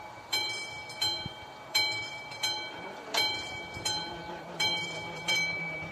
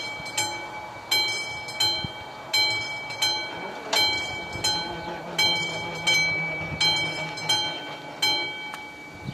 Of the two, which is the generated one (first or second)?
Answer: first